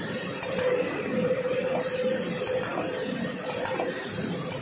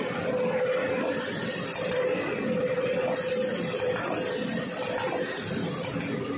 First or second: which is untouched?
second